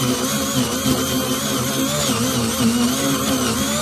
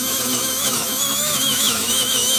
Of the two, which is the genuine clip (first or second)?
first